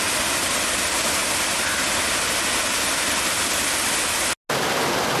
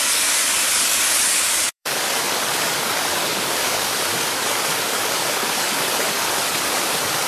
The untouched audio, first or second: first